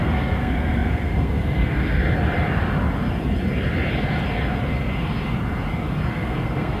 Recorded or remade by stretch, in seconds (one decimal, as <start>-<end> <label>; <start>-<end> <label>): 0.0-2.0 remade; 2.0-6.1 recorded; 6.1-6.8 remade